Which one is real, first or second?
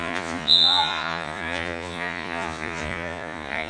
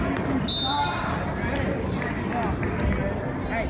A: second